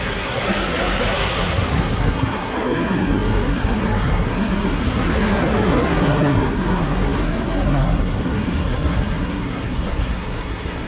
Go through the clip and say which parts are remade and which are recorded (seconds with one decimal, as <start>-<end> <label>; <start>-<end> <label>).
0.0-10.9 remade